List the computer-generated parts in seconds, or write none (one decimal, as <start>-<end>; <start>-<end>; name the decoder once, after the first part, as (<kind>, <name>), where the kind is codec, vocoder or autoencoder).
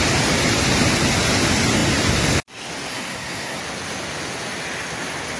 2.9-3.6 (codec, SNAC)